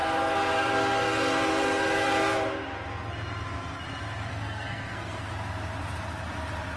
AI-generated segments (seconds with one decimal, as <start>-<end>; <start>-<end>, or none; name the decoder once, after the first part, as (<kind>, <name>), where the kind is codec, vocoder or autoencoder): 4.3-5.3 (codec, SNAC)